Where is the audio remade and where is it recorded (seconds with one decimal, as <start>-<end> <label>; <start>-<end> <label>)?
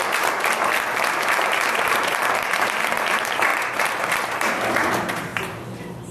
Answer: 0.0-1.3 recorded; 1.3-6.1 remade